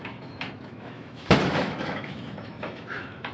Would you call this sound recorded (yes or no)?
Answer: no